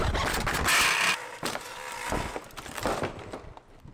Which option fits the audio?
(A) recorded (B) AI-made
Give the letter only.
A